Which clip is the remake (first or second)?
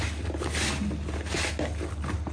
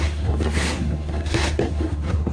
second